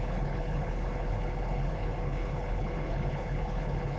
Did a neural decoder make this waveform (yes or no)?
yes